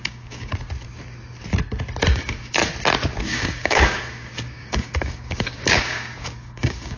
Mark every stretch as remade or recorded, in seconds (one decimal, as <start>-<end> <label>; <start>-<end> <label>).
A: 0.0-0.5 remade; 0.5-2.1 recorded; 2.1-2.6 remade; 2.6-3.2 recorded; 3.2-7.0 remade